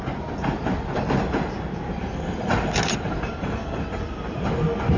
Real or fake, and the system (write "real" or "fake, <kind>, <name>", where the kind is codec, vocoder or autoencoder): real